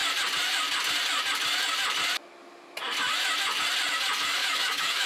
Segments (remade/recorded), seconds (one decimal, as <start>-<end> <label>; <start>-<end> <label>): 0.0-4.4 recorded; 4.4-5.1 remade